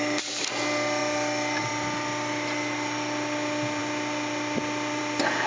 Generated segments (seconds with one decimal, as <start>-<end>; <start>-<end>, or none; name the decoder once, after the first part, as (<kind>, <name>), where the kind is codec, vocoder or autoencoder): none